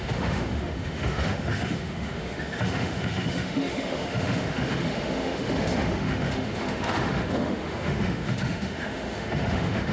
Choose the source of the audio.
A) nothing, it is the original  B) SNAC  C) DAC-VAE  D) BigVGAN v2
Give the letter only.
C